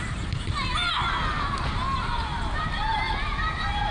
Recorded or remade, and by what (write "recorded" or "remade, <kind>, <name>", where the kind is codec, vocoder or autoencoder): recorded